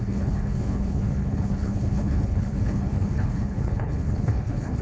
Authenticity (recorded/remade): remade